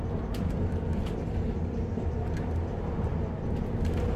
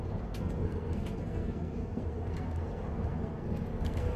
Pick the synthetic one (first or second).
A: second